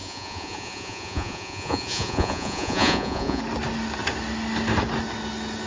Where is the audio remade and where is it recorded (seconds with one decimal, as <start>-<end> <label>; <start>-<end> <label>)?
0.0-3.4 remade; 3.4-5.7 recorded